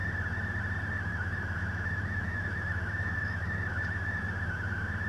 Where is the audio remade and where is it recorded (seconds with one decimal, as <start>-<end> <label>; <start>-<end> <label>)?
0.0-1.1 recorded; 1.1-4.2 remade; 4.2-5.1 recorded